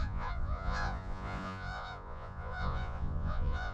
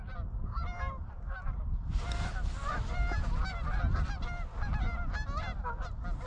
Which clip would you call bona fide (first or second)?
second